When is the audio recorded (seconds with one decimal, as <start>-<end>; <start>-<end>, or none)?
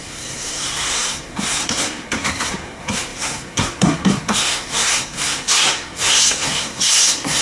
none